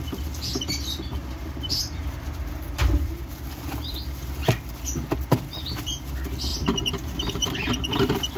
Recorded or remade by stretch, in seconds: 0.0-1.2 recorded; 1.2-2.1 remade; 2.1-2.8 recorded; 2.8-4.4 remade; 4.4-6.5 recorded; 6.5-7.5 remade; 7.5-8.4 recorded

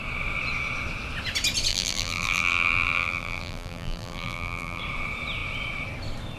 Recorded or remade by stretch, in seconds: 0.0-1.7 recorded; 1.7-4.8 remade; 4.8-6.4 recorded

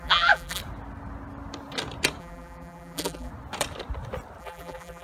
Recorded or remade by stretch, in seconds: 0.0-0.6 remade; 0.6-2.2 recorded; 2.2-3.3 remade; 3.3-4.4 recorded; 4.4-5.0 remade

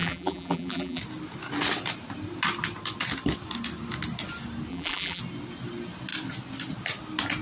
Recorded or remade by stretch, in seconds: 0.0-1.0 remade; 1.0-4.7 recorded; 4.7-5.2 remade; 5.2-7.4 recorded

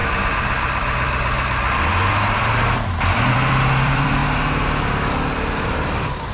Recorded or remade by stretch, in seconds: 0.0-3.3 recorded; 3.3-4.2 remade; 4.2-5.1 recorded; 5.1-6.3 remade

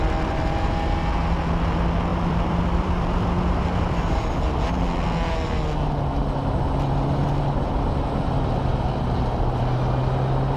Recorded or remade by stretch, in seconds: 0.0-2.1 recorded; 2.1-4.4 remade; 4.4-10.6 recorded

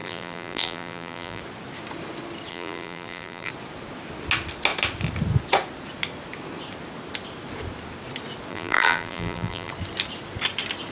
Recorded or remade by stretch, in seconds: 0.0-1.4 remade; 1.4-2.5 recorded; 2.5-3.5 remade; 3.5-8.5 recorded; 8.5-9.7 remade; 9.7-10.9 recorded

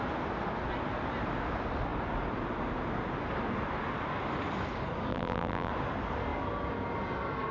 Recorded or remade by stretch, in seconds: 0.0-5.1 recorded; 5.1-5.7 remade; 5.7-7.5 recorded